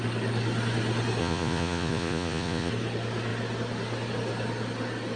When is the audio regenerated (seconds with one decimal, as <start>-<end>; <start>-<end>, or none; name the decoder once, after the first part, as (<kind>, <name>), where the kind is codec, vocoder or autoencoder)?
1.2-2.7 (vocoder, Vocos)